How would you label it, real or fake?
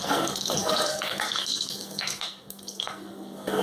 fake